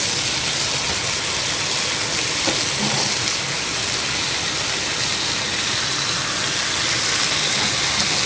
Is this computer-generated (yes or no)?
no